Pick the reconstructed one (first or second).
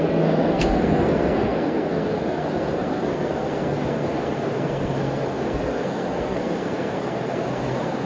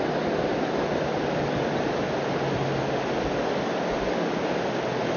first